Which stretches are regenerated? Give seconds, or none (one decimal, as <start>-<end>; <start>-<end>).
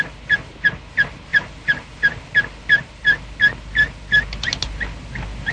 1.3-2.3